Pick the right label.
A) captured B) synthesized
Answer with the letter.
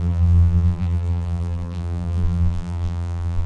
B